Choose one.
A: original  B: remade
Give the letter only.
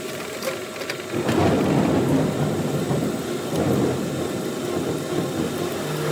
A